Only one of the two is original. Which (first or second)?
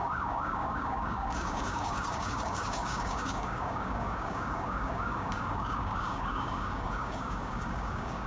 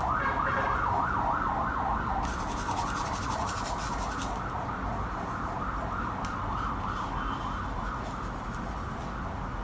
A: second